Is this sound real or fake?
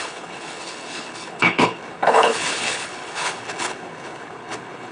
fake